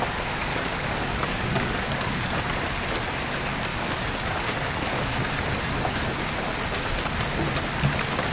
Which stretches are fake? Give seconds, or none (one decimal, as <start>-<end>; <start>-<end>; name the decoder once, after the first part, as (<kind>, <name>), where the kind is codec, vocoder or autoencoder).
0.5-2.4 (codec, DAC); 3.7-5.2